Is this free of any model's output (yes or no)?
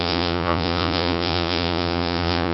no